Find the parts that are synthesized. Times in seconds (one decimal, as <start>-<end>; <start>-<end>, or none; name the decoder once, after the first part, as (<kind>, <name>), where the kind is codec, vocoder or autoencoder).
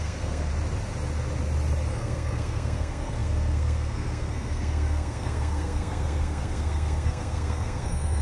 0.0-0.5 (codec, SNAC); 1.9-8.2